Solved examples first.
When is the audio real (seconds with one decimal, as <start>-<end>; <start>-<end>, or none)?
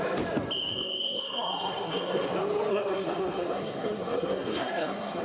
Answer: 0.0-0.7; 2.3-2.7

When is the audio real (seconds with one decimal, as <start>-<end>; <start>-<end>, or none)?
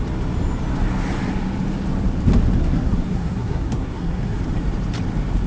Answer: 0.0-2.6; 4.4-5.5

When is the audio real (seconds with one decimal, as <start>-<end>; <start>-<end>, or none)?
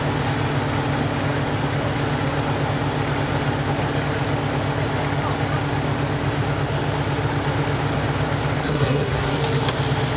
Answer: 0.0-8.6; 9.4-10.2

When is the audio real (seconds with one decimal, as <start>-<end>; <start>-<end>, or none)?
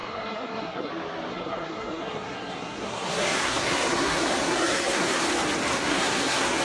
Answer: 0.9-1.3; 5.2-5.7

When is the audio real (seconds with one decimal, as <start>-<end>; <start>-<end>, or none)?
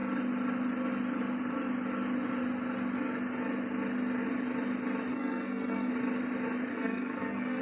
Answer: 0.0-5.1; 5.9-6.7